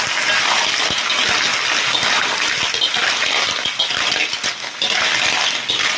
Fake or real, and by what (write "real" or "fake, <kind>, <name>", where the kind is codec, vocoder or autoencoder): real